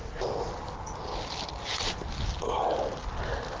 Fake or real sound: real